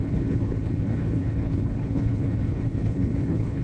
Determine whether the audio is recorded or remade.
remade